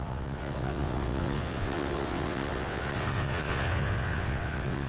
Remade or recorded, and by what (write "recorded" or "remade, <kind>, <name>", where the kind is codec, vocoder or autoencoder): remade, vocoder, WaveNeXt